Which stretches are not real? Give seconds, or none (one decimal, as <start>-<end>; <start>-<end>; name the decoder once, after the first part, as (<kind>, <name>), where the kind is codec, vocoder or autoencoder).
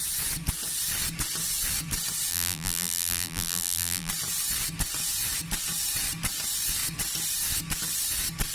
2.3-4.1 (vocoder, BigVGAN v2)